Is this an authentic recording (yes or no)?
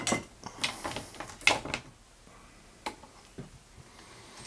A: yes